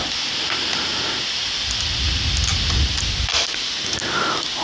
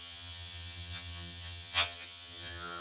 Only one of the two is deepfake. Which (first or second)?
second